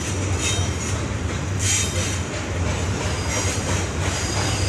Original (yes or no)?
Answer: yes